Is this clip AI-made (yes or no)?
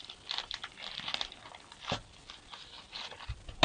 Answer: no